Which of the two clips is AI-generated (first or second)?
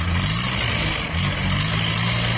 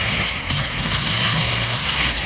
second